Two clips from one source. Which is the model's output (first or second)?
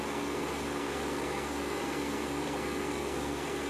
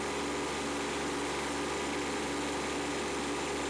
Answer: first